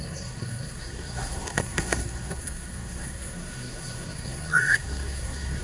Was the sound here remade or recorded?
remade